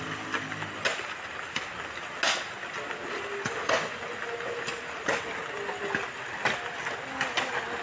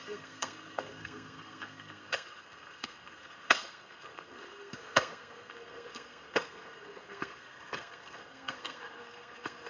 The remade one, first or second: second